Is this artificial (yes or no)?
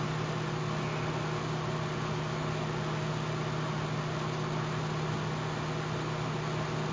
no